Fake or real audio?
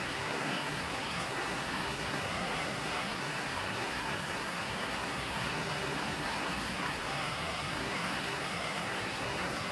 fake